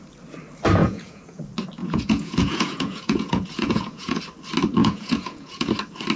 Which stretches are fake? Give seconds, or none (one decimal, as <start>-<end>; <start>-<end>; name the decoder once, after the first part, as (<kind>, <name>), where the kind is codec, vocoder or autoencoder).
0.8-1.4 (vocoder, Vocos); 1.8-4.2; 4.8-5.7